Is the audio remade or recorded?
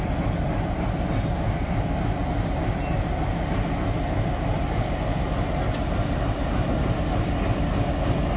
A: recorded